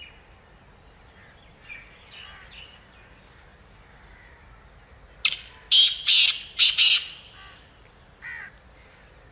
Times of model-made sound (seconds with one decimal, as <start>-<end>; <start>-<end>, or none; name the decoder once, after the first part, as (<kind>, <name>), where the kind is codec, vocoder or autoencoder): none